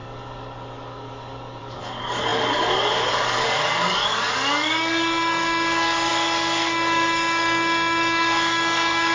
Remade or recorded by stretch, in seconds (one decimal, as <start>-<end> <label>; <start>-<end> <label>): 0.0-9.1 remade